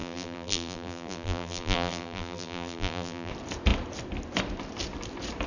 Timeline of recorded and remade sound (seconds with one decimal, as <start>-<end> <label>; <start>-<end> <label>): 0.0-3.3 remade; 3.3-5.5 recorded